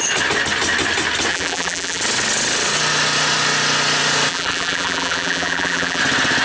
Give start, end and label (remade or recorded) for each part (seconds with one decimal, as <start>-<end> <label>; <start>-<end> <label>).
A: 0.0-1.3 recorded; 1.3-2.0 remade; 2.0-4.3 recorded; 4.3-6.0 remade; 6.0-6.4 recorded